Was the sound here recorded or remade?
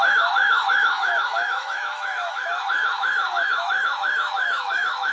remade